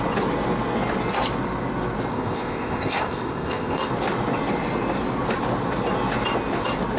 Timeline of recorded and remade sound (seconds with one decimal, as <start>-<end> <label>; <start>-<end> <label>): 0.0-2.1 recorded; 2.1-3.9 remade; 3.9-7.0 recorded